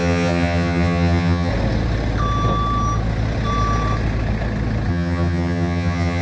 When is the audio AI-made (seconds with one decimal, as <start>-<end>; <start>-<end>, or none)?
0.0-1.5; 4.9-6.2